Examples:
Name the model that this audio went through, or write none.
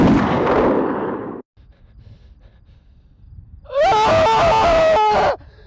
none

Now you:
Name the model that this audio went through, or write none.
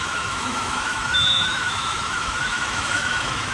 autoencoder, DAC-VAE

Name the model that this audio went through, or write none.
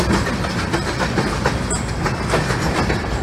none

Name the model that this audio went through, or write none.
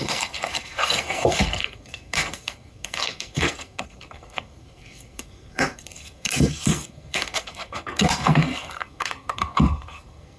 codec, SNAC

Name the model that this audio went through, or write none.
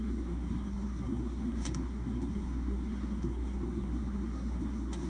codec, SNAC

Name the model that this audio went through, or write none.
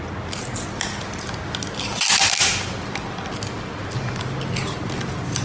none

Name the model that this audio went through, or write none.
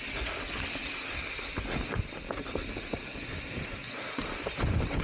none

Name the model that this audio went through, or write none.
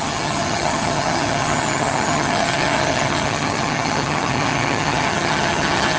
vocoder, HiFi-GAN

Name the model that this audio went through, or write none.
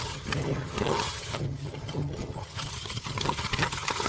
vocoder, HiFi-GAN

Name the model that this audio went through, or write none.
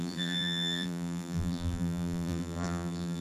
vocoder, BigVGAN v2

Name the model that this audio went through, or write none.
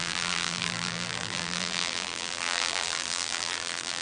vocoder, BigVGAN v2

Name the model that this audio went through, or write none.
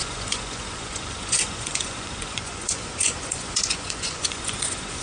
vocoder, Vocos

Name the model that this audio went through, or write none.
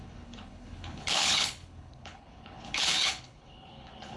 codec, HILCodec